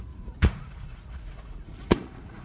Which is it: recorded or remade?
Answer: remade